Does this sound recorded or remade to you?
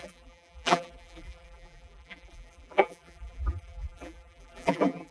remade